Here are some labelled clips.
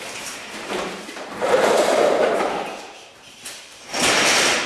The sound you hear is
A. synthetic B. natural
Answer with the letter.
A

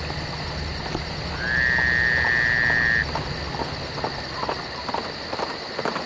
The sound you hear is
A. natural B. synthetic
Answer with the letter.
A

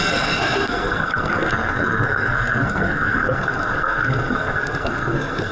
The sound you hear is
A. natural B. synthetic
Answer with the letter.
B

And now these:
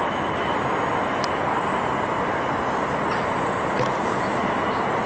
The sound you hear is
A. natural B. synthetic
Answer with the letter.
A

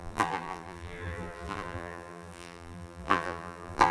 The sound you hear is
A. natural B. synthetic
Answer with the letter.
B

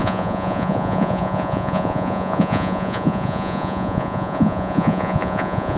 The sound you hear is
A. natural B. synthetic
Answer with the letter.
B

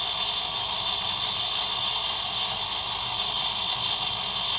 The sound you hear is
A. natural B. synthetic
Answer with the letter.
A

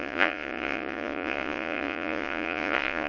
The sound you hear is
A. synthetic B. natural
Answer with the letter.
A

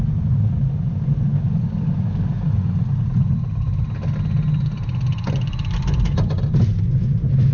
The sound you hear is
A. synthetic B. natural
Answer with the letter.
B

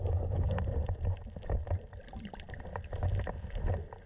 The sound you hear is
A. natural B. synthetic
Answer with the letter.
A